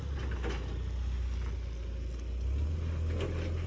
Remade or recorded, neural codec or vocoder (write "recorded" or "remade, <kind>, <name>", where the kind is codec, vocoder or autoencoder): recorded